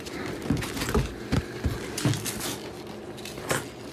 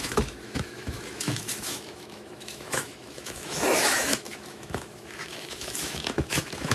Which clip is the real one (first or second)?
first